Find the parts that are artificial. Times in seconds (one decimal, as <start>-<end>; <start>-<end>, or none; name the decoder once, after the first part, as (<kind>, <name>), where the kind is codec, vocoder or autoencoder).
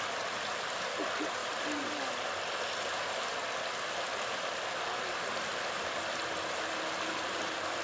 none